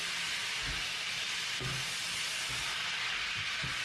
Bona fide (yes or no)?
yes